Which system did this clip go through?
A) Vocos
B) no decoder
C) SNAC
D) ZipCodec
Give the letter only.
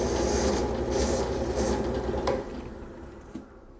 B